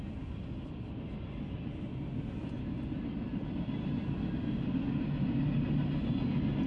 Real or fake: real